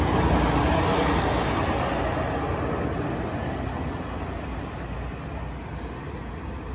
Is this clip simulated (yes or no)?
no